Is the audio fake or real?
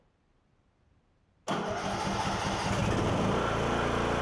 real